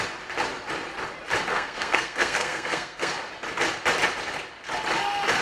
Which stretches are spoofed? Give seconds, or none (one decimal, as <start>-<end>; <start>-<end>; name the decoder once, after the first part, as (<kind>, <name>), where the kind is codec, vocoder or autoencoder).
1.5-3.1 (codec, SNAC)